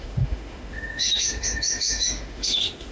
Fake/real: fake